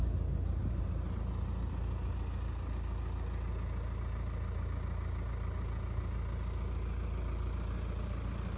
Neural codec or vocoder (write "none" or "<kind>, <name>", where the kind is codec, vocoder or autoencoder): none